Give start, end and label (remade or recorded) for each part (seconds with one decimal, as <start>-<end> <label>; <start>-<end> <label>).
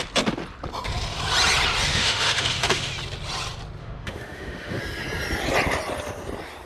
0.0-1.9 recorded; 1.9-2.9 remade; 2.9-3.8 recorded; 3.8-4.8 remade; 4.8-6.7 recorded